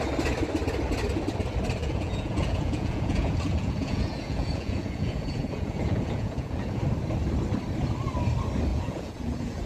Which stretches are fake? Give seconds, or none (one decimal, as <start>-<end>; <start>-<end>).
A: 1.8-6.8; 8.7-9.7